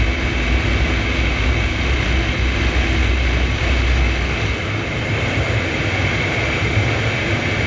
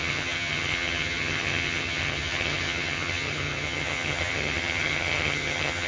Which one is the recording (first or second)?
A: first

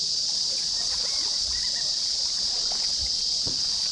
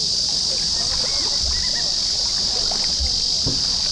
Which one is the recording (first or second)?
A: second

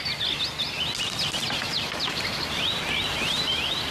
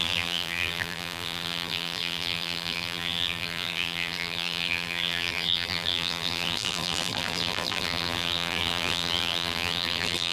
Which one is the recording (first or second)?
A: first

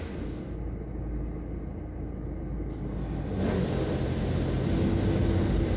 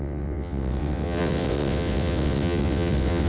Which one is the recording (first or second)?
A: first